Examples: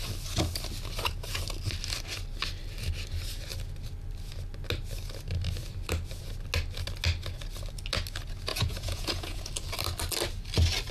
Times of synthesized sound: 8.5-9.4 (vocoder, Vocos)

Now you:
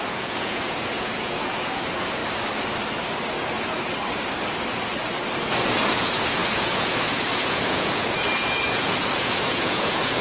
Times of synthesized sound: 0.0-2.2 (vocoder, Vocos); 5.9-10.2

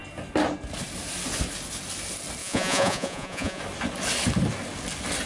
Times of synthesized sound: 2.4-3.6 (vocoder, Vocos)

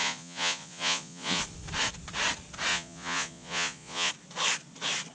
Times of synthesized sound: 0.0-1.4 (vocoder, Vocos); 2.7-4.1

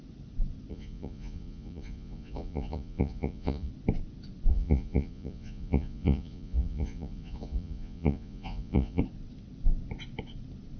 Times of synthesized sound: 0.7-3.7 (vocoder, Vocos); 4.5-9.0

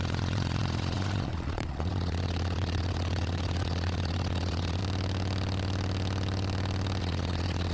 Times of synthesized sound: 0.0-4.8 (vocoder, Vocos); 7.0-7.7